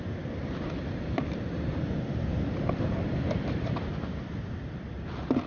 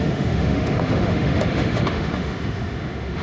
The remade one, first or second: second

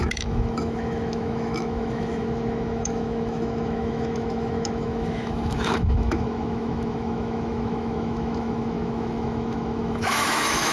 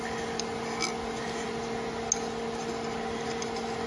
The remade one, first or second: first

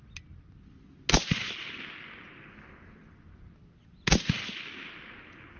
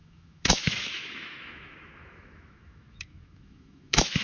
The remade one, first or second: second